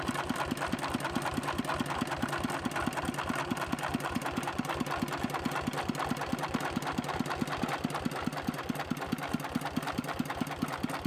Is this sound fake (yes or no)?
no